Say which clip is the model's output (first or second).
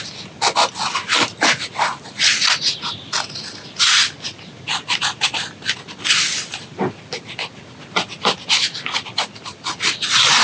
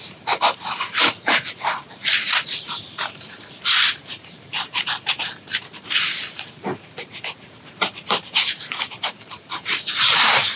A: second